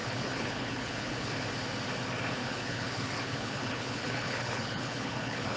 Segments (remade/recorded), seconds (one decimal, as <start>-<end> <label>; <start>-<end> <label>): 0.0-1.4 remade; 1.4-2.4 recorded; 2.4-5.6 remade